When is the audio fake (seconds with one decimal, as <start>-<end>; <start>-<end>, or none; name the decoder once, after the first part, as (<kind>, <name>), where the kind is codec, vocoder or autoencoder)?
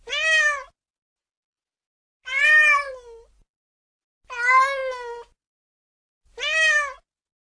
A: none